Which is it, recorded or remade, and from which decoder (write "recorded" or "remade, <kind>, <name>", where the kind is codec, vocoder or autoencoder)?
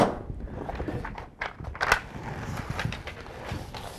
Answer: recorded